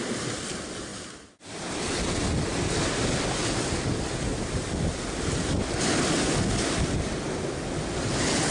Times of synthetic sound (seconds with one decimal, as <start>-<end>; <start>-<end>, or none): none